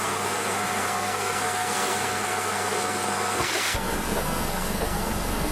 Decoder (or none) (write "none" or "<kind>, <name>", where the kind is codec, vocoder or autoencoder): codec, SNAC